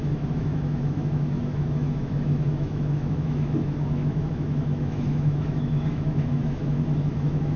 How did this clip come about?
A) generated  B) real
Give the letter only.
A